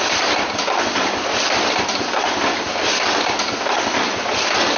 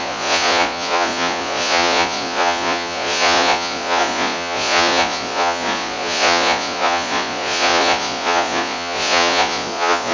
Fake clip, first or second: second